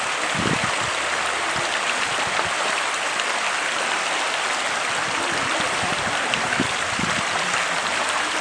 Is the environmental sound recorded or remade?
recorded